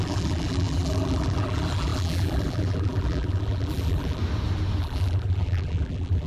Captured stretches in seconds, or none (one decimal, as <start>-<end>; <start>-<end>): 4.2-4.8